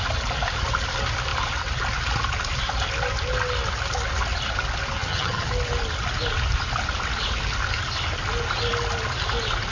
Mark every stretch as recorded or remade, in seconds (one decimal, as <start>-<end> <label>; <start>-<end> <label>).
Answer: 0.0-5.0 recorded; 5.0-5.5 remade; 5.5-9.7 recorded